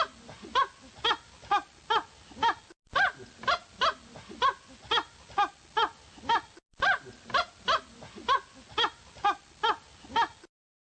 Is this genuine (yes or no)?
yes